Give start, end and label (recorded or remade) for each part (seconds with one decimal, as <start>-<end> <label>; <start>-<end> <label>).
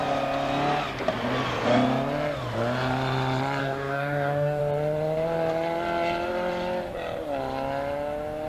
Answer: 0.0-3.6 recorded; 3.6-4.6 remade; 4.6-8.5 recorded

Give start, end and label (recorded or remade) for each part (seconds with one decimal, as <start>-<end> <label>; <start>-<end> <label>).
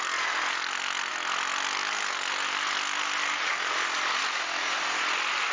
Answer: 0.0-5.5 recorded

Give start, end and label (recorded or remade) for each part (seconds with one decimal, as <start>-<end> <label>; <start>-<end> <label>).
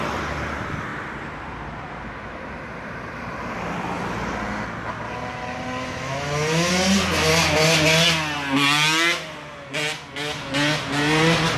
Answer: 0.0-5.8 recorded; 5.8-6.7 remade; 6.7-11.6 recorded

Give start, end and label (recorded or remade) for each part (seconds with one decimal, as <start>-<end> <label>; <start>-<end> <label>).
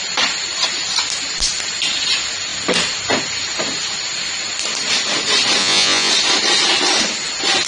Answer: 0.0-5.6 recorded; 5.6-6.1 remade; 6.1-7.7 recorded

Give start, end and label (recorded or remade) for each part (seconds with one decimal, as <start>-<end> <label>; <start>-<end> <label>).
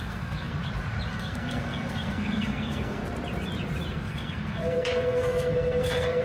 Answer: 0.0-0.6 remade; 0.6-1.1 recorded; 1.1-3.0 remade; 3.0-3.9 recorded; 3.9-6.2 remade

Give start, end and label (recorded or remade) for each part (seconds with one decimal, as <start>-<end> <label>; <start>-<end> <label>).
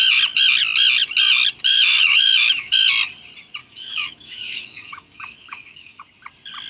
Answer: 0.0-1.7 recorded; 1.7-2.9 remade; 2.9-3.6 recorded; 3.6-6.0 remade; 6.0-6.7 recorded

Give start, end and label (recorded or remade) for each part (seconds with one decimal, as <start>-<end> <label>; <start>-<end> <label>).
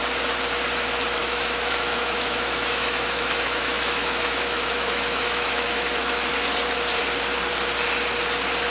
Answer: 0.0-1.2 recorded; 1.2-6.3 remade; 6.3-8.7 recorded